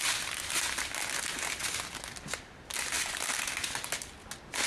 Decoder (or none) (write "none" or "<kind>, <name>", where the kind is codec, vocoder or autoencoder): none